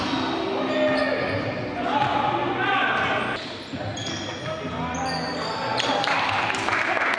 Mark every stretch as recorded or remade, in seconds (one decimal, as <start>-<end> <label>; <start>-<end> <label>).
0.0-5.7 recorded; 5.7-6.8 remade; 6.8-7.2 recorded